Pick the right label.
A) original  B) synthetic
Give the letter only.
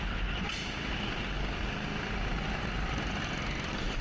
A